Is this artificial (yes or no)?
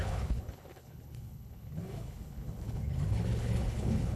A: yes